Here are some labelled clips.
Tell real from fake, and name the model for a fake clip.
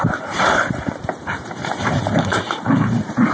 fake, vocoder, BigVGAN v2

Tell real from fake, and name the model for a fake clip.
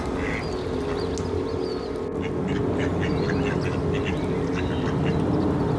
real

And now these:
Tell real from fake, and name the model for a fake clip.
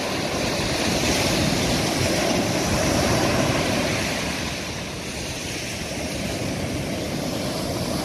real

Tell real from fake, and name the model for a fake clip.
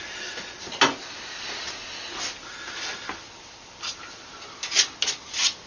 real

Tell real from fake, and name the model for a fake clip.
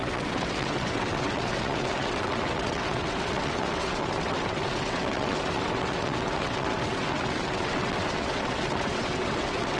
fake, vocoder, WaveNeXt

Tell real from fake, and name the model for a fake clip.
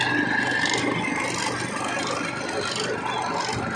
real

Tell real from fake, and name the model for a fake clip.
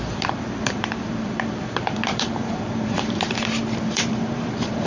fake, vocoder, BigVGAN v2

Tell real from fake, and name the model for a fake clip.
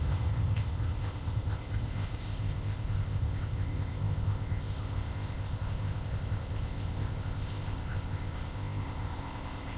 fake, codec, ZipCodec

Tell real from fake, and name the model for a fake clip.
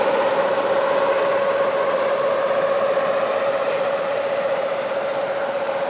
real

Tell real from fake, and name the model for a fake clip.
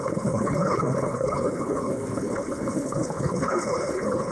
fake, codec, HILCodec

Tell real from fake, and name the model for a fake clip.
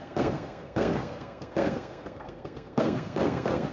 fake, codec, SNAC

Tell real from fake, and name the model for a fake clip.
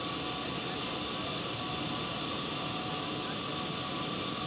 real